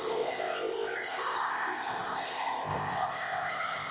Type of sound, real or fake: fake